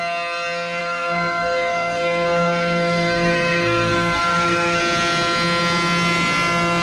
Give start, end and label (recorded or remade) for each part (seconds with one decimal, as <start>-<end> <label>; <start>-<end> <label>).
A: 0.0-0.8 recorded; 0.8-4.8 remade; 4.8-6.8 recorded